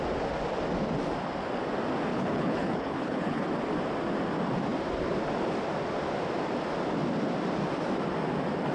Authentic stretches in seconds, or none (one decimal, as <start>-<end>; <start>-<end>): 0.0-2.1; 3.5-8.7